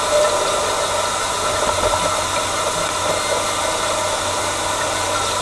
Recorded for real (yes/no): yes